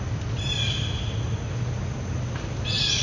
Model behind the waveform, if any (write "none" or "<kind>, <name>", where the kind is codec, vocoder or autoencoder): none